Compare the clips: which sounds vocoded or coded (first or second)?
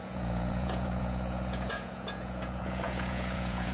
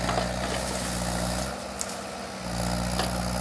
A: first